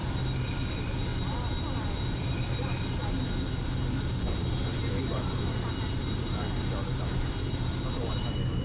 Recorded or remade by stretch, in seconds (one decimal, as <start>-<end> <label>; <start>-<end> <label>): 0.0-8.6 recorded